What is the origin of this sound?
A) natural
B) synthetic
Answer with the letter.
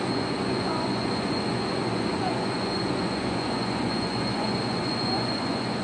B